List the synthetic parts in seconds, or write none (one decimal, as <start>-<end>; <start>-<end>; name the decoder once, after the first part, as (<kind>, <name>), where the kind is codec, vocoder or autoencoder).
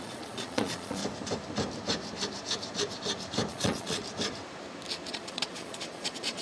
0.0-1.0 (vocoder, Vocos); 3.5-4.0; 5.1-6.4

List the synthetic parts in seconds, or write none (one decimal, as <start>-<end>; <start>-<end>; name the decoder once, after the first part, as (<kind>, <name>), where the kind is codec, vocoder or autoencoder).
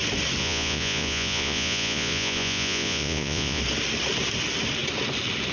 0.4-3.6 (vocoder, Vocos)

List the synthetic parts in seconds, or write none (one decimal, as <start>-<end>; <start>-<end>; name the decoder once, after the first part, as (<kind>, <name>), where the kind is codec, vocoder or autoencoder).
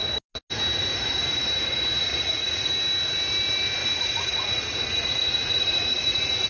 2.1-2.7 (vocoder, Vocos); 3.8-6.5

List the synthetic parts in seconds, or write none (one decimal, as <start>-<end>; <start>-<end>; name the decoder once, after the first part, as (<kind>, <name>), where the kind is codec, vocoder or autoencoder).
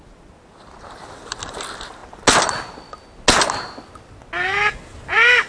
none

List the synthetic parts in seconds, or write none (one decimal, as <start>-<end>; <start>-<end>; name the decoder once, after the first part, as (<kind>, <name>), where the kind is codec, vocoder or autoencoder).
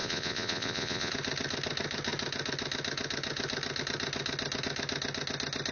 0.0-1.1 (vocoder, Vocos)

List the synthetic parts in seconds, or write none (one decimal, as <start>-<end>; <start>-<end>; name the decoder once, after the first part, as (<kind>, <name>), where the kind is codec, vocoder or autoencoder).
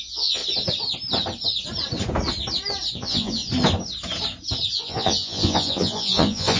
0.0-0.4 (vocoder, Vocos); 2.9-3.4; 4.7-6.6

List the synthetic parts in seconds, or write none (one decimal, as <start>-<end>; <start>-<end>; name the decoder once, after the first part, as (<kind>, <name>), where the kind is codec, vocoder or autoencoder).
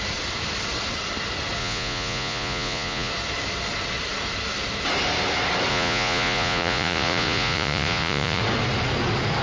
1.6-3.1 (vocoder, Vocos); 5.7-8.4